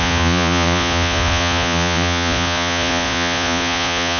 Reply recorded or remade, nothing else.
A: remade